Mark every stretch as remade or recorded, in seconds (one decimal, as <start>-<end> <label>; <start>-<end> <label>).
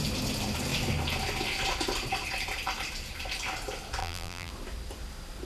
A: 0.0-4.0 recorded; 4.0-4.5 remade; 4.5-5.5 recorded